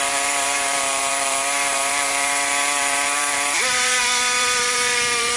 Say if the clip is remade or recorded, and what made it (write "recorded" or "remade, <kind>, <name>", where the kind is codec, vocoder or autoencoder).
remade, vocoder, BigVGAN v2